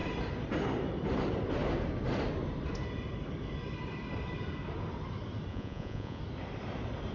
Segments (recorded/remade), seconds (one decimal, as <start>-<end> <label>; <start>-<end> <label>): 0.0-5.5 recorded; 5.5-6.2 remade; 6.2-7.1 recorded